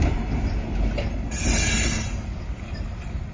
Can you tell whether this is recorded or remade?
recorded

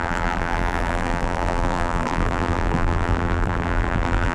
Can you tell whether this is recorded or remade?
remade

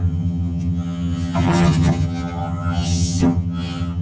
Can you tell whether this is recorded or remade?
remade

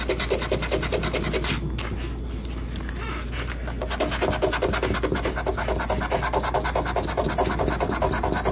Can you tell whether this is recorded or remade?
recorded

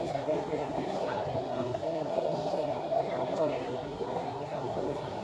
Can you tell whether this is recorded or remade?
remade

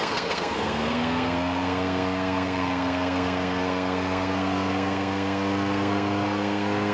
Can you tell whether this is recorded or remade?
remade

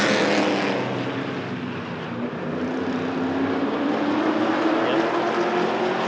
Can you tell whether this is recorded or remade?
recorded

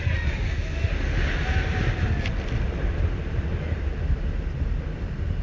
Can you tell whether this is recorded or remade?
recorded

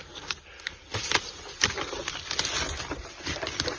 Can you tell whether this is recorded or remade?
recorded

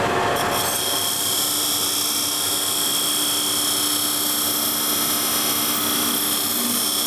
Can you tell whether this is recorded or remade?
recorded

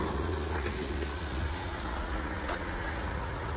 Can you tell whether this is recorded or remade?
remade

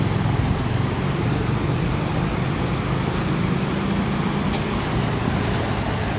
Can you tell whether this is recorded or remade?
recorded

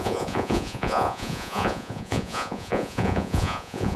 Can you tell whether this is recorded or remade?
remade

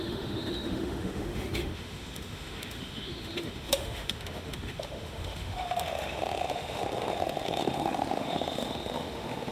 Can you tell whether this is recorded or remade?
remade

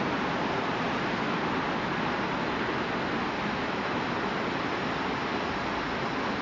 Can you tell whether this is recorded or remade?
recorded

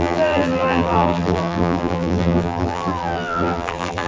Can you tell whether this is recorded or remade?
remade